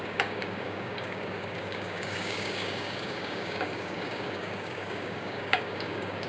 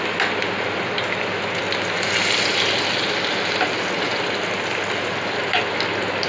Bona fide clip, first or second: second